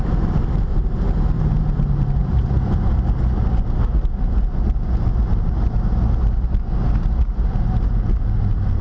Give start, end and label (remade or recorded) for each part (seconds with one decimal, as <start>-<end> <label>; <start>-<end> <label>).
0.0-2.2 recorded; 2.2-2.9 remade; 2.9-8.8 recorded